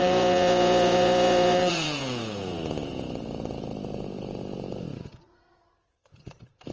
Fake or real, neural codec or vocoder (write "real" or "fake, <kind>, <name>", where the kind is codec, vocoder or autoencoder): fake, vocoder, Vocos